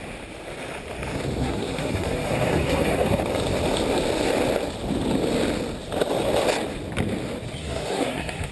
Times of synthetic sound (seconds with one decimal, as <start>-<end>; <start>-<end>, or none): 1.4-3.2; 7.6-8.5